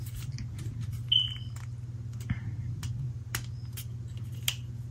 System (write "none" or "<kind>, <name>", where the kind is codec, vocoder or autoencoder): none